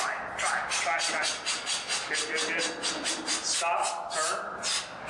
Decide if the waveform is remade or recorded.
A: recorded